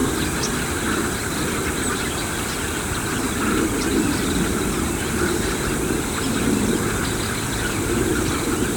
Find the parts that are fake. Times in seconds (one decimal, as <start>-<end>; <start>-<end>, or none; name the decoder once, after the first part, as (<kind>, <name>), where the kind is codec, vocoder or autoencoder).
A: 8.1-8.8 (vocoder, BigVGAN v2)